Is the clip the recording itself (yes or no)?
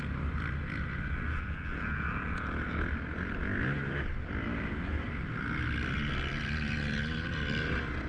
yes